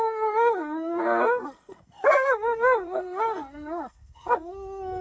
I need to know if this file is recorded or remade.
remade